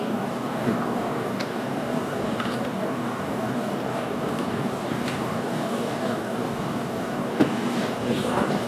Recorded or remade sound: remade